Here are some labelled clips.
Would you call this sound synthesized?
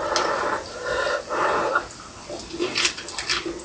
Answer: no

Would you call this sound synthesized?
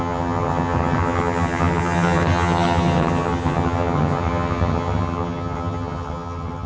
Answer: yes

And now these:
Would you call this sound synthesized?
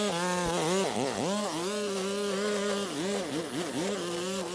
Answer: no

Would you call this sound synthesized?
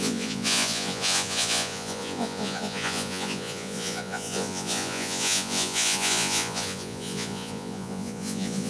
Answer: yes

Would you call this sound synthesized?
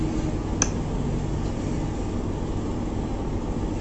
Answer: no